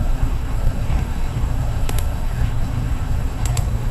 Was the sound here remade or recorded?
remade